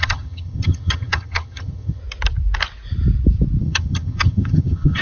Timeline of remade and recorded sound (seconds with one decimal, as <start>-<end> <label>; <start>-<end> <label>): 0.0-2.0 remade; 2.0-3.6 recorded; 3.6-5.0 remade

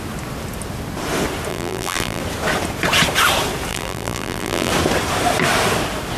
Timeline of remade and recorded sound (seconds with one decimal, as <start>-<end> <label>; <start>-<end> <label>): 0.0-1.5 recorded; 1.5-2.2 remade; 2.2-3.7 recorded; 3.7-4.7 remade; 4.7-6.2 recorded

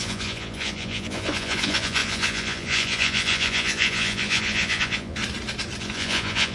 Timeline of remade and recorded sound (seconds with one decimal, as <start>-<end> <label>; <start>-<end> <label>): 0.0-5.2 remade; 5.2-5.8 recorded; 5.8-6.5 remade

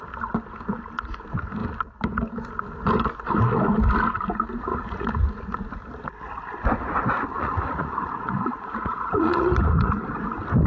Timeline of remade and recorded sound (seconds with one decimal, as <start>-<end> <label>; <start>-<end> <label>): 0.0-4.7 recorded; 4.7-5.4 remade; 5.4-7.3 recorded; 7.3-9.9 remade; 9.9-10.7 recorded

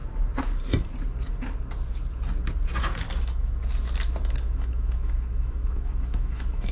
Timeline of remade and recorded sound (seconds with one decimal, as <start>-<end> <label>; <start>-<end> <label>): 0.0-3.2 recorded; 3.2-3.6 remade; 3.6-4.2 recorded; 4.2-6.7 remade

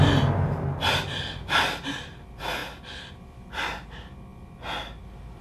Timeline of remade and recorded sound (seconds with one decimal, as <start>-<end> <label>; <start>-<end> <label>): 0.0-5.4 recorded

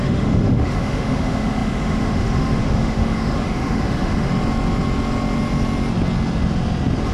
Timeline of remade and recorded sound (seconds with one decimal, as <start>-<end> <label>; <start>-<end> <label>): 0.0-4.3 remade; 4.3-7.1 recorded